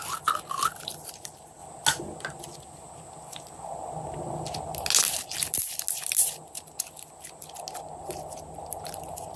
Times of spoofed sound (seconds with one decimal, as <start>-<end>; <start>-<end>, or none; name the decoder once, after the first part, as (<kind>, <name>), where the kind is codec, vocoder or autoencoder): none